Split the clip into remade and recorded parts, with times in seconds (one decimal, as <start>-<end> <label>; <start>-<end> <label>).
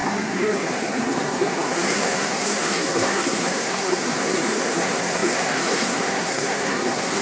0.0-7.2 remade